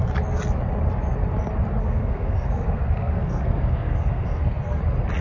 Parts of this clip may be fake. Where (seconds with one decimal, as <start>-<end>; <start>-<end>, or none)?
1.8-4.8